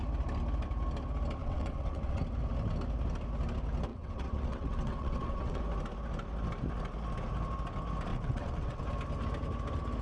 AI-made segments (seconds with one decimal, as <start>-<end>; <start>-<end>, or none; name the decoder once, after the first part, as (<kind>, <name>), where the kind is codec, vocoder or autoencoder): 1.4-2.2 (vocoder, WaveNeXt); 3.9-5.6; 8.1-8.8